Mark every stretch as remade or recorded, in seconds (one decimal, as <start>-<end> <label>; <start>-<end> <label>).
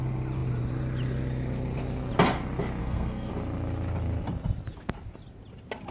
0.0-2.8 recorded; 2.8-3.3 remade; 3.3-5.9 recorded